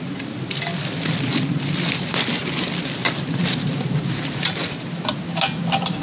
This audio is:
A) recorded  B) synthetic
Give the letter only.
A